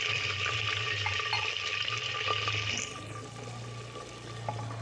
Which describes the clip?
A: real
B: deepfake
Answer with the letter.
A